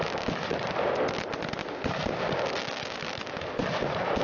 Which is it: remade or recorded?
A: recorded